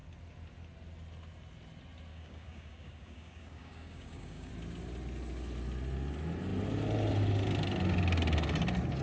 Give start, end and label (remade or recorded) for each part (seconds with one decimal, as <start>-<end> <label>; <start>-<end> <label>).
0.0-2.1 recorded; 2.1-4.5 remade; 4.5-9.0 recorded

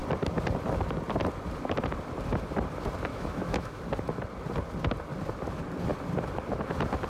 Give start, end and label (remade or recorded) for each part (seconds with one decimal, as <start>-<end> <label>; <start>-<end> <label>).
0.0-3.1 recorded; 3.1-3.8 remade; 3.8-7.1 recorded

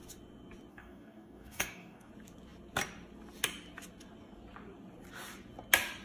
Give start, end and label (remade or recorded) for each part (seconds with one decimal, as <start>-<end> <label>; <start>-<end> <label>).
0.0-0.7 recorded; 0.7-2.1 remade; 2.1-6.0 recorded

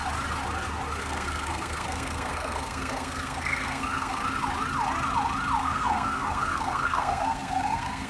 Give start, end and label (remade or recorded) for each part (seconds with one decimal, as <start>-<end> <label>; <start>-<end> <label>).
0.0-1.0 recorded; 1.0-4.2 remade; 4.2-5.6 recorded; 5.6-8.1 remade

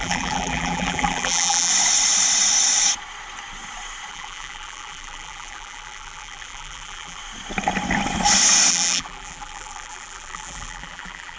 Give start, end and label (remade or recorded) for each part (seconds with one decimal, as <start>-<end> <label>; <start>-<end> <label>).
0.0-1.7 remade; 1.7-4.1 recorded; 4.1-7.2 remade; 7.2-8.7 recorded; 8.7-11.4 remade

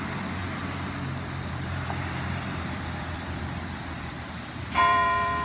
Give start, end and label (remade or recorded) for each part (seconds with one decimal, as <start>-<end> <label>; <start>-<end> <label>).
0.0-0.4 remade; 0.4-1.5 recorded; 1.5-5.4 remade

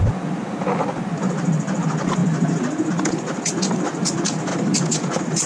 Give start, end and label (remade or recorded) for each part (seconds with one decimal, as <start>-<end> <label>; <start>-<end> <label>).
0.0-5.5 recorded

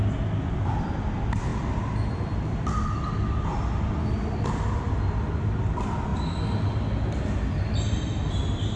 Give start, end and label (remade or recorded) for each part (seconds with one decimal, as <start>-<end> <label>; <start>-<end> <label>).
0.0-8.8 recorded